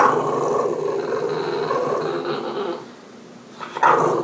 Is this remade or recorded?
recorded